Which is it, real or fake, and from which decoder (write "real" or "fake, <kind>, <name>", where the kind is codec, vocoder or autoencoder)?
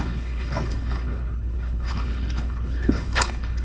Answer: fake, codec, HILCodec